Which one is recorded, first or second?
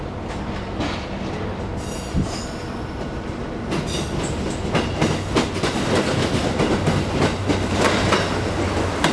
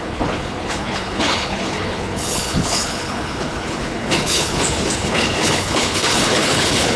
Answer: first